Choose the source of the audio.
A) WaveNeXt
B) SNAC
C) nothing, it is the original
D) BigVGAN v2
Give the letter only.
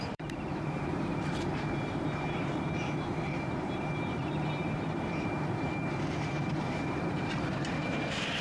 D